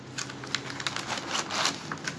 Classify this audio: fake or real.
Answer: real